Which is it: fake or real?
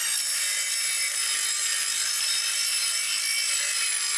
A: real